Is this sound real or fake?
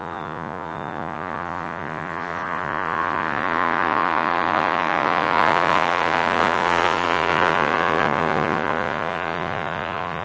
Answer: fake